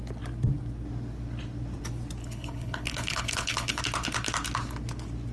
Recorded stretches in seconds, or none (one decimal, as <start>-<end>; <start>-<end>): 0.0-2.2; 3.8-5.3